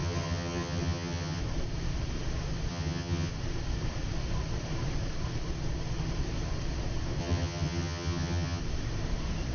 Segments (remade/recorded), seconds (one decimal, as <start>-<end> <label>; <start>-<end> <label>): 0.0-1.4 remade; 1.4-2.7 recorded; 2.7-3.3 remade; 3.3-7.2 recorded; 7.2-8.6 remade; 8.6-9.5 recorded